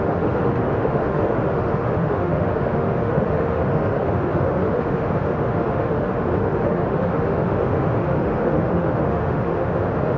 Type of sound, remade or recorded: remade